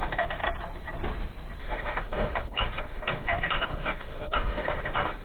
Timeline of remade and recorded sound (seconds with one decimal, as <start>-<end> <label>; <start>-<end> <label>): 0.0-0.4 remade; 0.4-1.6 recorded; 1.6-5.2 remade